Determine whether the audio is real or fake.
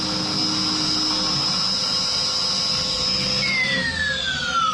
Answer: real